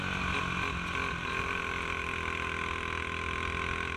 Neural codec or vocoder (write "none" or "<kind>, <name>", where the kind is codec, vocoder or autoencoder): none